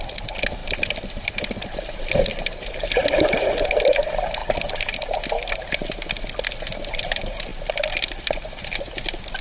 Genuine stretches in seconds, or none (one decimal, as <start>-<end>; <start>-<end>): 0.0-9.4